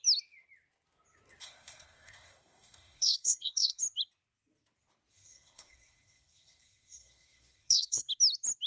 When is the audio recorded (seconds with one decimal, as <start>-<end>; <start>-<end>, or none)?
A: 0.0-1.4; 3.8-5.1; 8.1-8.7